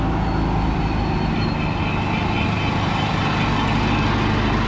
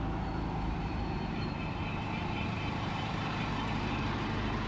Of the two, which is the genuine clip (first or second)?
first